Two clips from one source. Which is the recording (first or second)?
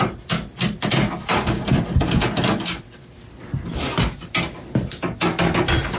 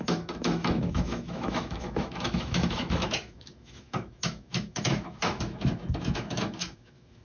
first